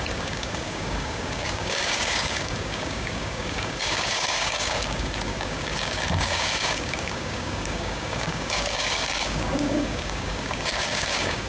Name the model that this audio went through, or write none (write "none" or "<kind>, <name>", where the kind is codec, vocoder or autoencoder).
codec, DAC